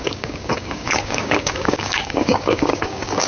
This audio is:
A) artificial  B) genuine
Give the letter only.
A